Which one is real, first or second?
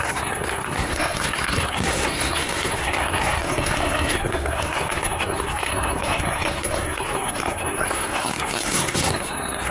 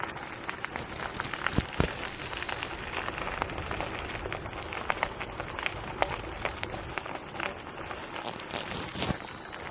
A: second